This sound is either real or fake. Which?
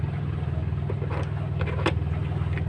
real